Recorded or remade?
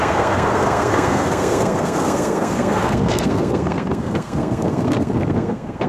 remade